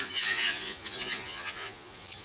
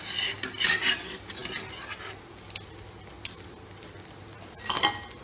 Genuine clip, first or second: second